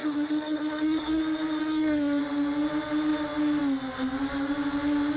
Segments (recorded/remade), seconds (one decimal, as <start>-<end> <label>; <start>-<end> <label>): 0.0-1.2 remade; 1.2-1.6 recorded; 1.6-2.2 remade; 2.2-5.2 recorded